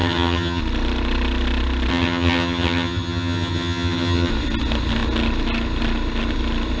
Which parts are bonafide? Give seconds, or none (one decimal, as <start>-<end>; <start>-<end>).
0.6-1.9; 4.3-6.8